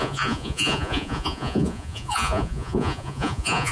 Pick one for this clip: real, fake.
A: fake